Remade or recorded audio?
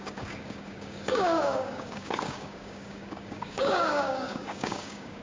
remade